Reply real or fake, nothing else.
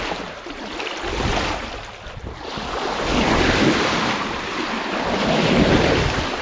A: real